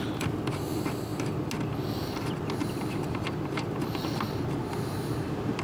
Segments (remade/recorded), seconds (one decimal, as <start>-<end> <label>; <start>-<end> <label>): 0.0-5.6 recorded